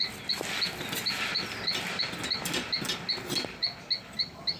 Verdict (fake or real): real